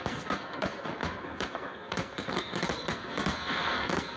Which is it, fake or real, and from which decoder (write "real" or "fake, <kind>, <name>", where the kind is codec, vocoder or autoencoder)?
fake, codec, SNAC